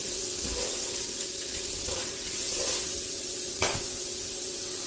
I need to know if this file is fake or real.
fake